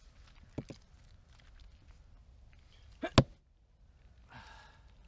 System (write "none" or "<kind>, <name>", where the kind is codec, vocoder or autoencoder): none